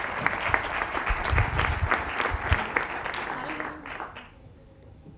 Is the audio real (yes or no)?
yes